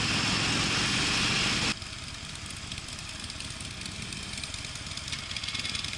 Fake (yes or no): no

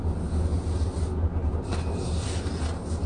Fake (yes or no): no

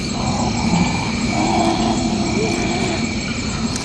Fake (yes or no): no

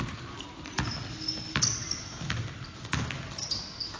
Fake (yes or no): no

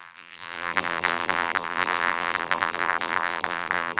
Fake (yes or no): yes